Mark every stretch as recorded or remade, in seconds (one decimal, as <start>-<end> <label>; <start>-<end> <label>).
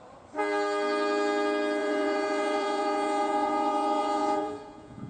0.0-1.8 recorded; 1.8-5.1 remade